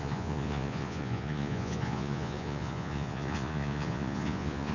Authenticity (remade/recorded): remade